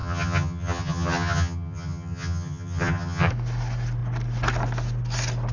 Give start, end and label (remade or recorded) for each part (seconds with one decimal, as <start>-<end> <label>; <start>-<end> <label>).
0.0-3.3 remade; 3.3-5.5 recorded